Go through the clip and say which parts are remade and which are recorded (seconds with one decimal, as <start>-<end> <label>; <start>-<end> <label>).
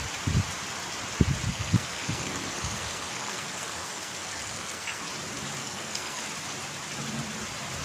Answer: 0.0-1.5 recorded; 1.5-5.0 remade; 5.0-5.6 recorded; 5.6-6.2 remade; 6.2-7.8 recorded